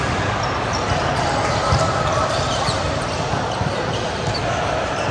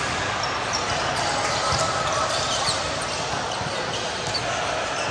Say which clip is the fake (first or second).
first